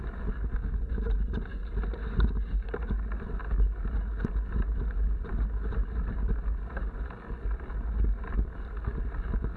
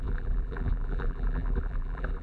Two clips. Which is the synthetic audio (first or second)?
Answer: second